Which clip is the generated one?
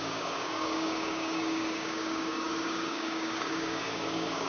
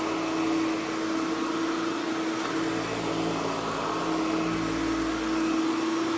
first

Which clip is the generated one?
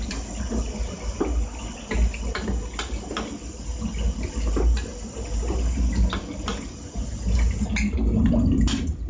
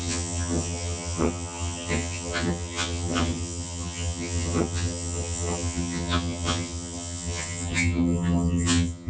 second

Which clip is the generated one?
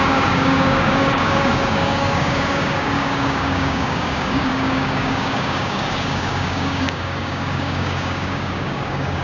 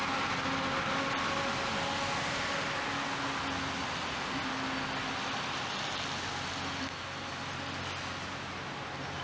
first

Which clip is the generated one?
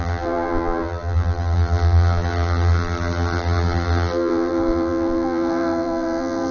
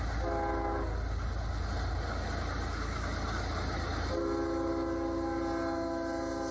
first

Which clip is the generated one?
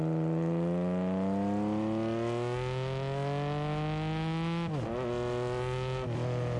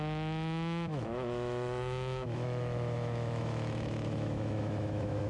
second